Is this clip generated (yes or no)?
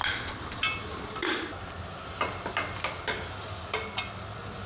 no